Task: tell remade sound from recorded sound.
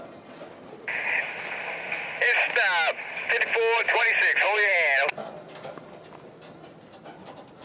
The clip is recorded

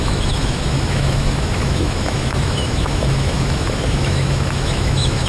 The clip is remade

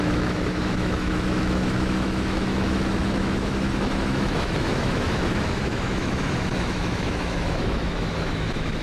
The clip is remade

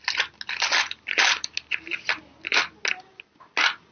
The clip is recorded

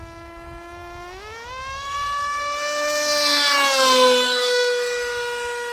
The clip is remade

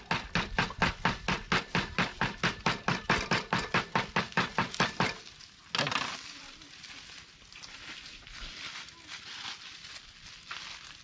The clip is recorded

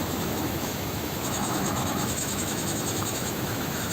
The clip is remade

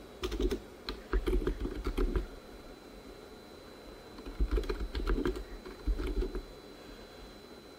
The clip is recorded